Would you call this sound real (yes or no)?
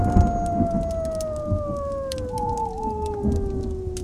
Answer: yes